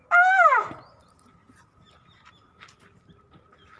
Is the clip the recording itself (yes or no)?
yes